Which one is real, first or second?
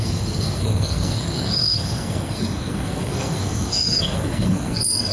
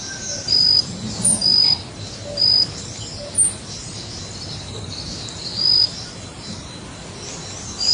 second